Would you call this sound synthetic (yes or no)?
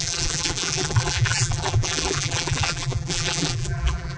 yes